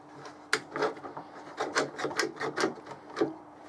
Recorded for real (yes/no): yes